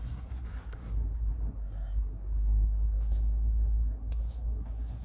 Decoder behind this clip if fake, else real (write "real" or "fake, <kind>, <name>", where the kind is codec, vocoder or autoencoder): fake, codec, SNAC